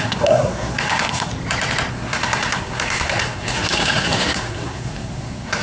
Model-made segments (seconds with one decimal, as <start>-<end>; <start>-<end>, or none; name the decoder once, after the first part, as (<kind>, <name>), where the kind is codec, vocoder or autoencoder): 0.0-1.3 (codec, SNAC); 1.9-5.6